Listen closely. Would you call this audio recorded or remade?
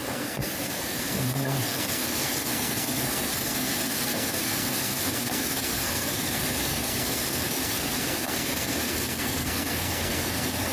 remade